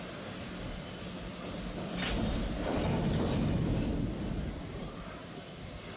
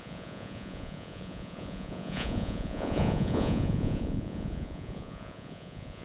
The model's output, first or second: second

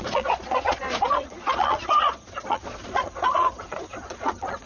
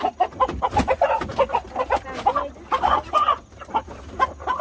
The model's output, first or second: first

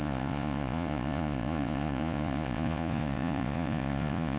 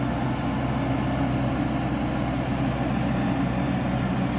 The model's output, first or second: first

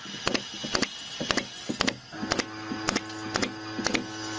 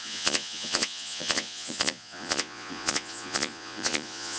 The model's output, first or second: second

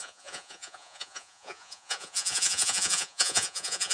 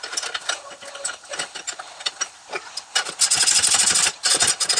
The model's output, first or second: first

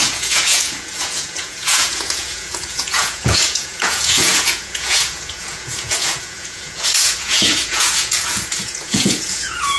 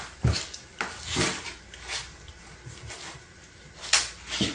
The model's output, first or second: first